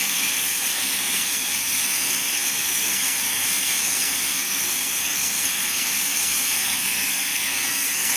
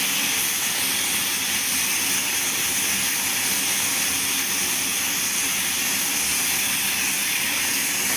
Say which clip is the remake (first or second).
first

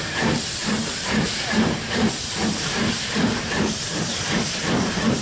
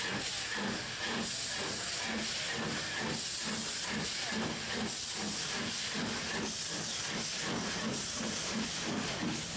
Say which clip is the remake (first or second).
first